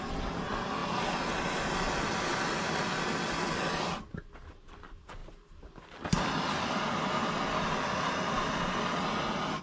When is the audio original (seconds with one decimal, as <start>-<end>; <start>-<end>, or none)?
0.0-9.6